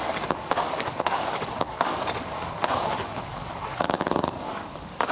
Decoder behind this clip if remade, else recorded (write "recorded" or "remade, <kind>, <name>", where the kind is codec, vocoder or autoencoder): remade, codec, DAC